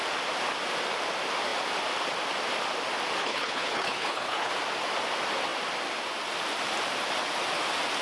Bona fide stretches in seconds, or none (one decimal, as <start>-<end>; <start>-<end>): 0.0-3.2; 4.5-8.0